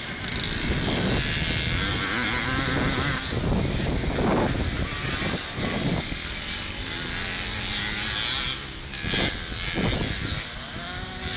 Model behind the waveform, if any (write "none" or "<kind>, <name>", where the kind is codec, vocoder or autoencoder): none